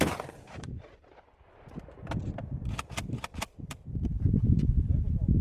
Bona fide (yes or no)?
no